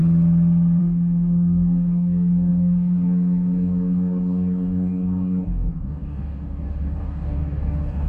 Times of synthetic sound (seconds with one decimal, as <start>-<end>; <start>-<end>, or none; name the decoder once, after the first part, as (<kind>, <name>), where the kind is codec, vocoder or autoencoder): 0.8-8.1 (codec, DAC)